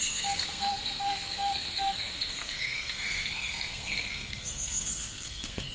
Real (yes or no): no